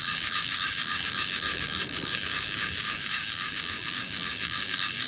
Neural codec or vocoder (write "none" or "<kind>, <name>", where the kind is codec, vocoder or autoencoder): codec, DAC